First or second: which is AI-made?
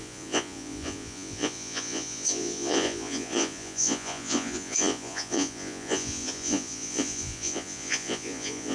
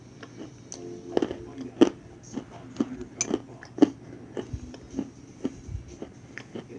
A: first